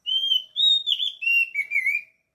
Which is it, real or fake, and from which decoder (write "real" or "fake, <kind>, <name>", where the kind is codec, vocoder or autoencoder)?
real